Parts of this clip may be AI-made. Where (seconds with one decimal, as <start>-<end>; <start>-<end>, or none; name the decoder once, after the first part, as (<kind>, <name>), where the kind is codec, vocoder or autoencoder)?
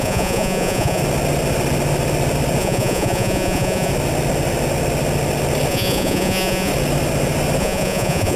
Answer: 0.0-1.0 (vocoder, Vocos); 2.6-3.9; 5.7-6.7; 7.6-8.4